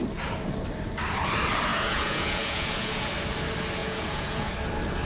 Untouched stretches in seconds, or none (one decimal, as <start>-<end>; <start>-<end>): 0.0-1.7; 3.1-3.8; 4.5-5.0